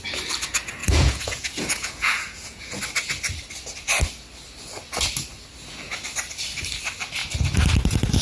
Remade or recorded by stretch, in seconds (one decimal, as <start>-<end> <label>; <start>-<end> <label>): 0.0-0.8 recorded; 0.8-2.8 remade; 2.8-8.2 recorded